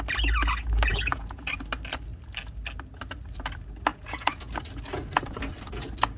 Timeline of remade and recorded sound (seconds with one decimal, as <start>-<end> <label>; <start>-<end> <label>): 0.0-0.9 recorded; 0.9-1.5 remade; 1.5-3.9 recorded; 3.9-4.5 remade; 4.5-6.2 recorded